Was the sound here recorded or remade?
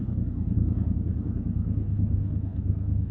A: remade